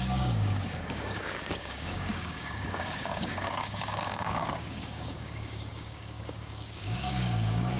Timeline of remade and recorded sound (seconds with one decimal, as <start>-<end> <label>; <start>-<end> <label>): 0.0-7.8 remade